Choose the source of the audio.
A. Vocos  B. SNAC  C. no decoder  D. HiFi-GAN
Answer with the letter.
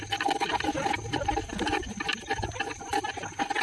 C